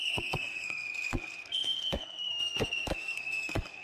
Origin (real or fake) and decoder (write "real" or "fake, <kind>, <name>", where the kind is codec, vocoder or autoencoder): fake, codec, SNAC